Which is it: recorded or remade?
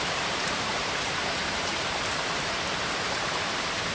remade